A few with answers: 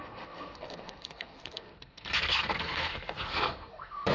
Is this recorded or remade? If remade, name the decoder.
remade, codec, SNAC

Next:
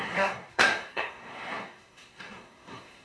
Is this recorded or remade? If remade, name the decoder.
remade, codec, SNAC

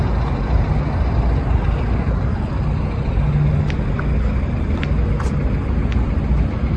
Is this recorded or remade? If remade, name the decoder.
recorded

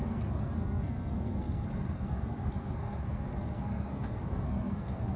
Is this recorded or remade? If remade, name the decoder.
remade, codec, SNAC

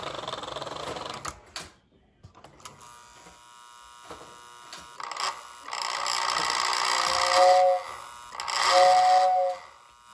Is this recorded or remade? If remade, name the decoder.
recorded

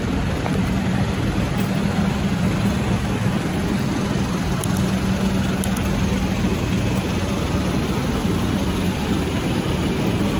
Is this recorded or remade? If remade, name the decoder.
recorded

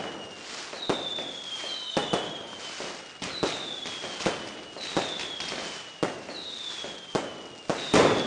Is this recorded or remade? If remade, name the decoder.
recorded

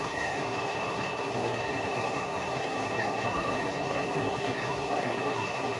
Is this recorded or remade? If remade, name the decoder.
remade, codec, SNAC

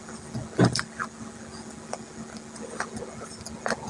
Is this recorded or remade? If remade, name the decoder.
recorded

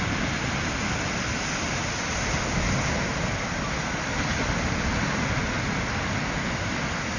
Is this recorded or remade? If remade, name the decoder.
recorded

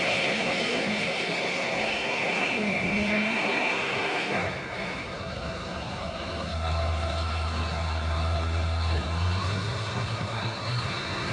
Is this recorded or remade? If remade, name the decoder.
remade, codec, SNAC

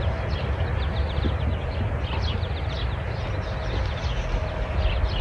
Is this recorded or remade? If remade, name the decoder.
recorded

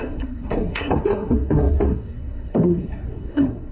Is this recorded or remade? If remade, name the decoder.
remade, codec, SNAC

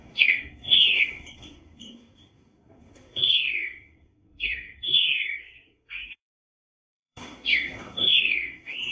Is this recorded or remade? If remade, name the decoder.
remade, codec, SNAC